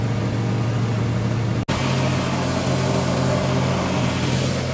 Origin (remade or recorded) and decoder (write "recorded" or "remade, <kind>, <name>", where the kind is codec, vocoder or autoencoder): recorded